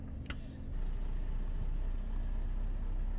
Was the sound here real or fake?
real